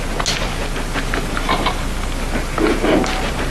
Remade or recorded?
recorded